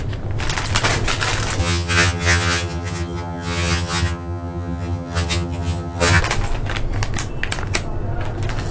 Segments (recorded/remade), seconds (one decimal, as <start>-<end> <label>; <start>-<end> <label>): 0.0-1.6 recorded; 1.6-6.2 remade; 6.2-8.7 recorded